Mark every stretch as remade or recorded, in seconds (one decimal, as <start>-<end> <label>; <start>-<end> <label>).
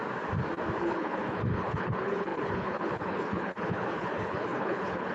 0.0-0.8 recorded; 0.8-5.1 remade